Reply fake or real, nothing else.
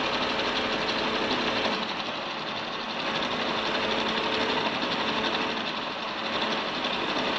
real